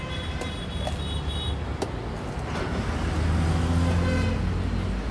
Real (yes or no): yes